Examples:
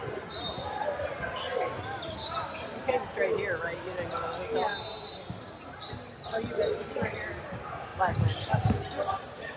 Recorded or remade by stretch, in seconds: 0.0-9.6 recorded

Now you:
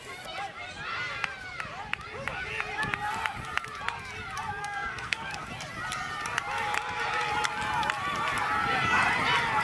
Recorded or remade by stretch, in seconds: 0.0-4.6 recorded; 4.6-5.5 remade; 5.5-9.6 recorded

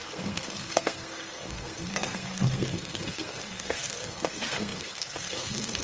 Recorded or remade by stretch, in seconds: 0.0-5.8 remade

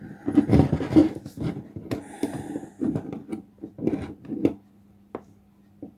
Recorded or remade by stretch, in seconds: 0.0-1.0 recorded; 1.0-4.2 remade; 4.2-6.0 recorded

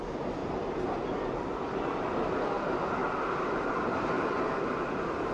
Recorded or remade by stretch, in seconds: 0.0-3.0 remade; 3.0-3.7 recorded; 3.7-5.3 remade